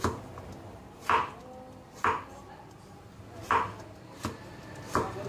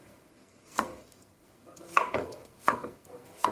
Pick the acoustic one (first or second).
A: first